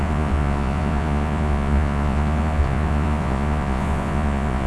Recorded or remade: remade